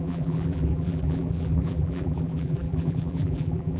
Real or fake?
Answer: fake